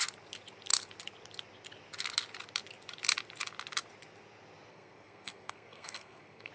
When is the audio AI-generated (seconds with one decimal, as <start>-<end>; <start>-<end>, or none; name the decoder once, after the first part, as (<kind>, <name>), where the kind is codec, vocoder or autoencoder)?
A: 4.7-6.5 (codec, SNAC)